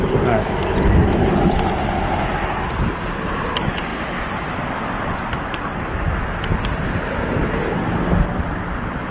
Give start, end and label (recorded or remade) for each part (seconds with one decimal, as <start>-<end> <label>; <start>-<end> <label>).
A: 0.0-9.1 recorded